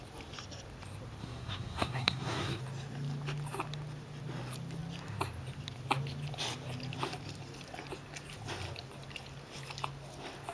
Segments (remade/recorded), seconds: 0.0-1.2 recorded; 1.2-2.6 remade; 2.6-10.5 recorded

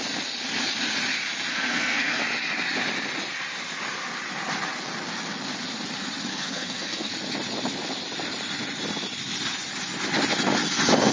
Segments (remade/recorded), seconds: 0.0-1.5 recorded; 1.5-2.2 remade; 2.2-6.3 recorded; 6.3-7.1 remade; 7.1-11.1 recorded

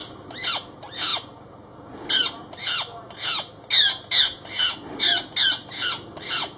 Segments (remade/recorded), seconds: 0.0-6.6 recorded

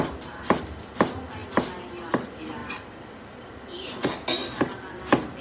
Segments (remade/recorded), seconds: 0.0-2.6 recorded; 2.6-3.5 remade; 3.5-5.4 recorded

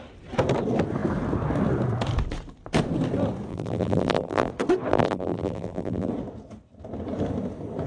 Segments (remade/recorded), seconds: 0.0-3.5 recorded; 3.5-4.5 remade; 4.5-4.9 recorded; 4.9-6.1 remade; 6.1-7.9 recorded

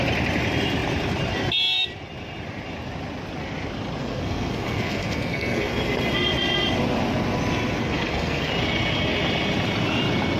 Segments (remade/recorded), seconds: 0.0-4.0 recorded; 4.0-5.7 remade; 5.7-7.8 recorded; 7.8-8.5 remade; 8.5-10.4 recorded

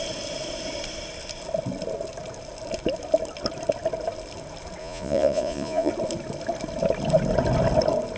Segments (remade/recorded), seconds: 0.0-4.8 recorded; 4.8-5.9 remade; 5.9-8.2 recorded

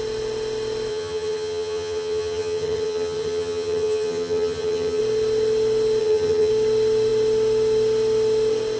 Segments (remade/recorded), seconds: 0.0-0.9 recorded; 0.9-5.0 remade; 5.0-6.0 recorded; 6.0-6.5 remade; 6.5-8.8 recorded